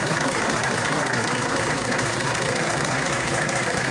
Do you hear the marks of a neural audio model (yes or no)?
yes